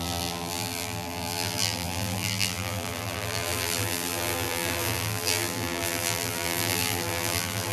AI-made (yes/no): yes